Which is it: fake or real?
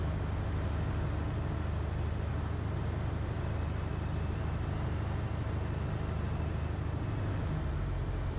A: real